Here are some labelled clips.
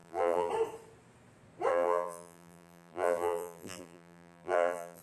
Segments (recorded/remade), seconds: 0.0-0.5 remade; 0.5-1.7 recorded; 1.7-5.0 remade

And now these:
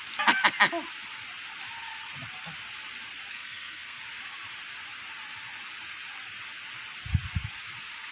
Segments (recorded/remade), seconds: 0.0-3.3 recorded; 3.3-4.0 remade; 4.0-8.1 recorded

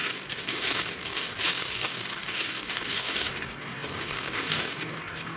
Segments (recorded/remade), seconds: 0.0-5.4 remade

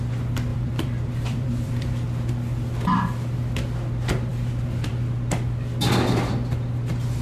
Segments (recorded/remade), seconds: 0.0-0.5 recorded; 0.5-1.9 remade; 1.9-7.2 recorded

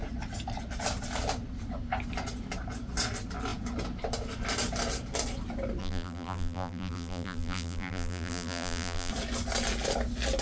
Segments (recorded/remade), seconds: 0.0-5.8 recorded; 5.8-9.1 remade; 9.1-10.4 recorded

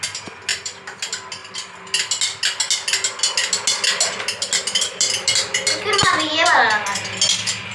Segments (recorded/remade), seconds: 0.0-0.5 recorded; 0.5-1.0 remade; 1.0-7.7 recorded